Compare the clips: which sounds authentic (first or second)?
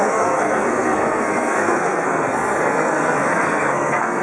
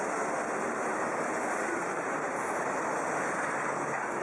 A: second